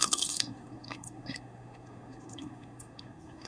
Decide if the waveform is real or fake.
fake